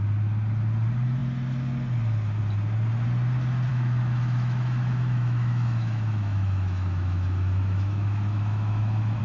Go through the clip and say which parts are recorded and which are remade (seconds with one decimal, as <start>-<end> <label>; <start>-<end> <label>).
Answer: 0.0-3.7 recorded; 3.7-9.2 remade